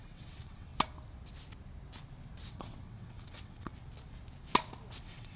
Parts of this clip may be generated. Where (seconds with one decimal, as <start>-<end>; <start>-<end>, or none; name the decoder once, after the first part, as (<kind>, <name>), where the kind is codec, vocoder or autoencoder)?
0.0-0.7 (vocoder, WaveNeXt); 2.5-3.7; 5.0-5.4